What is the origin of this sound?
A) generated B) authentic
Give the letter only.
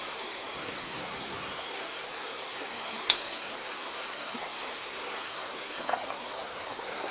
A